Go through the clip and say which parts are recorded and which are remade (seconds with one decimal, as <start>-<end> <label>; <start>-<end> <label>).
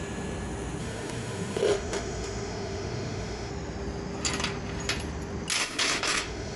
0.0-0.8 recorded; 0.8-3.5 remade; 3.5-5.6 recorded; 5.6-6.6 remade